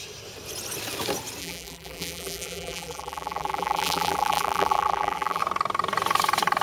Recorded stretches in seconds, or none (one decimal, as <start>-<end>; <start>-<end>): 0.0-1.4; 5.4-6.6